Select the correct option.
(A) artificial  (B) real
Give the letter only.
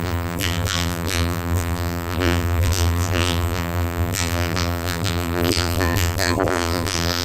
A